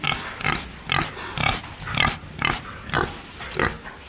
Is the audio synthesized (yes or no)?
no